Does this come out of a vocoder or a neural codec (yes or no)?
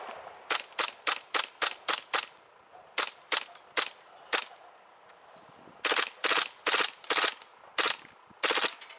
no